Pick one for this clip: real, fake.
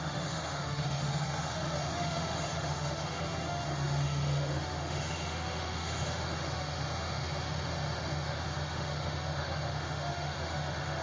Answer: fake